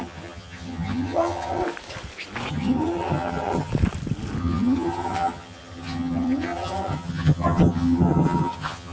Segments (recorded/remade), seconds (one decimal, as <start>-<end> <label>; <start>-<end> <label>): 0.0-1.6 remade; 1.6-2.5 recorded; 2.5-3.7 remade; 3.7-4.4 recorded; 4.4-8.9 remade